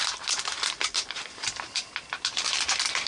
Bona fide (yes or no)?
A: no